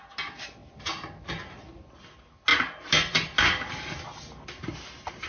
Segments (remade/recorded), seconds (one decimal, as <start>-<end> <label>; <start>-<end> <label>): 0.0-0.6 recorded; 0.6-1.9 remade; 1.9-5.3 recorded